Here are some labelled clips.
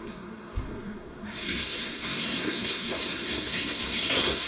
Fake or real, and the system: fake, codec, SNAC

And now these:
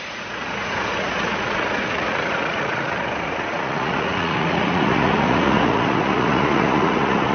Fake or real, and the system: fake, vocoder, Vocos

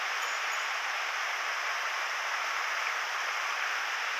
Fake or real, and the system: real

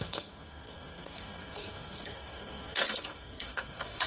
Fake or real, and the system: fake, codec, SNAC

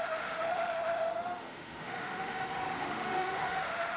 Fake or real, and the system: fake, autoencoder, DAC-VAE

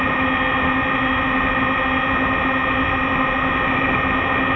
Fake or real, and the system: real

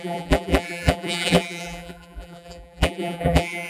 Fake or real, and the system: fake, vocoder, BigVGAN v2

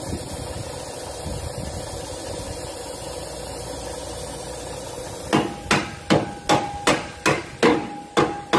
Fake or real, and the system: real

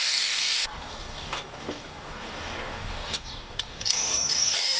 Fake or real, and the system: fake, codec, DAC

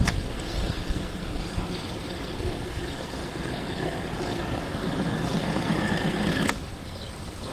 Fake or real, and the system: fake, codec, SNAC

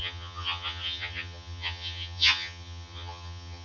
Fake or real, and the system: fake, vocoder, HiFi-GAN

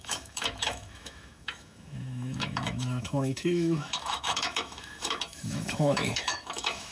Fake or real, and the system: fake, autoencoder, DAC-VAE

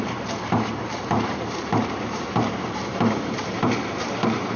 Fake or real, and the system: fake, vocoder, BigVGAN v2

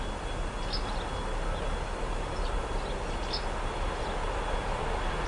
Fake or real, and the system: real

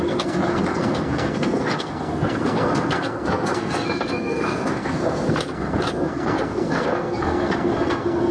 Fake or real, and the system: fake, codec, SNAC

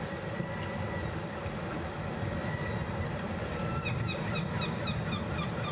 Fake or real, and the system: fake, vocoder, BigVGAN v2